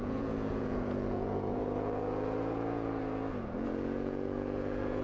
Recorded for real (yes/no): no